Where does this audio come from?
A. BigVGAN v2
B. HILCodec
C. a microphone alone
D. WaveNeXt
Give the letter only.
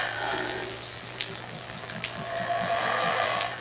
A